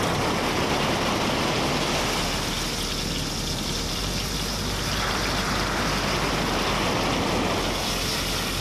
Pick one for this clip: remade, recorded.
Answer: recorded